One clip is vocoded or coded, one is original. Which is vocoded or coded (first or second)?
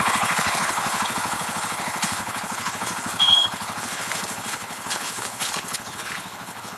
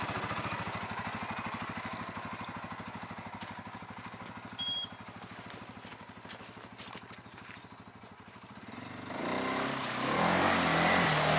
first